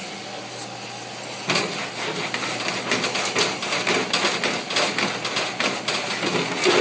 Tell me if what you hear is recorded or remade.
recorded